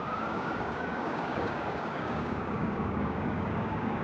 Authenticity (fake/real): fake